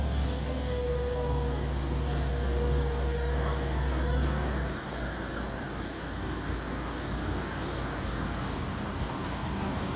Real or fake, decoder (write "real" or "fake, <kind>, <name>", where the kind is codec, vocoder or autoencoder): fake, codec, DAC